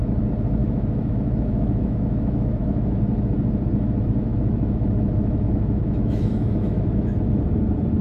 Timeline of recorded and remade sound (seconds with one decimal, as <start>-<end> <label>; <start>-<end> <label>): 0.0-0.6 recorded; 0.6-3.0 remade; 3.0-4.2 recorded; 4.2-7.4 remade; 7.4-8.0 recorded